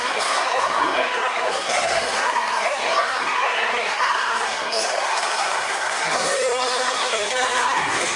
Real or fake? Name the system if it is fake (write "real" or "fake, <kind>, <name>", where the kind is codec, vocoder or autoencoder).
fake, codec, SNAC